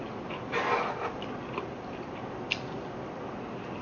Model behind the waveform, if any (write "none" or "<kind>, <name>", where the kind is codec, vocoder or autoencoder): none